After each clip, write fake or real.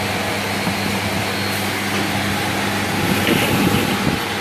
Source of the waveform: real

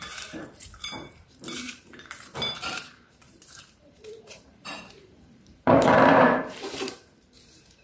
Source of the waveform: fake